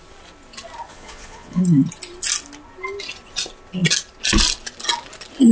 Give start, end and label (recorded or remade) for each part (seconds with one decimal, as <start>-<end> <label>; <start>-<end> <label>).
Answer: 0.0-0.9 recorded; 0.9-1.6 remade; 1.6-5.5 recorded